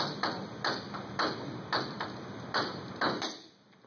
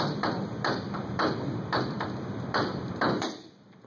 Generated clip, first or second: second